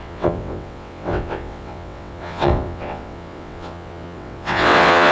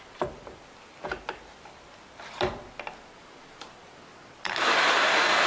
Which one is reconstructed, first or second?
first